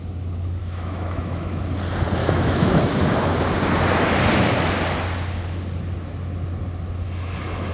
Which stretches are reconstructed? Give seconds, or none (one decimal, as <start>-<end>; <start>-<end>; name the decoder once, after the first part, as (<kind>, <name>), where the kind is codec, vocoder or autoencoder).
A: 0.6-1.6 (autoencoder, DAC-VAE); 2.2-2.8